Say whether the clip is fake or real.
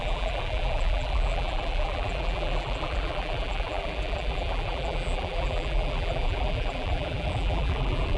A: fake